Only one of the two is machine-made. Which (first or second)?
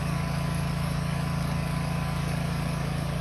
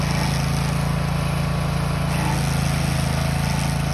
first